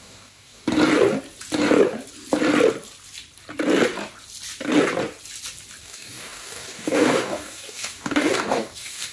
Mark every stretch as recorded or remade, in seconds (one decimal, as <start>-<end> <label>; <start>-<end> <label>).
0.0-0.6 remade; 0.6-5.8 recorded; 5.8-9.1 remade

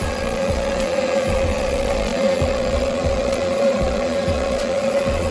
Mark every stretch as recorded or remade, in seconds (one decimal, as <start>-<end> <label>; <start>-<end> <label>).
0.0-5.3 remade